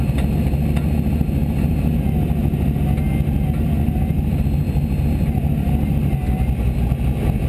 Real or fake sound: real